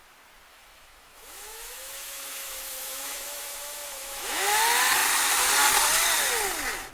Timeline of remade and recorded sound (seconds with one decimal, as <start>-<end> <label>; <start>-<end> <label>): 0.0-0.5 recorded; 0.5-4.6 remade; 4.6-6.9 recorded